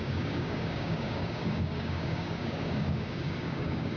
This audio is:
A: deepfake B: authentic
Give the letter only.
A